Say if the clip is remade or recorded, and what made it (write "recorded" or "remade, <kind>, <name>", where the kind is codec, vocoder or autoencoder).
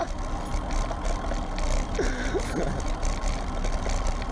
recorded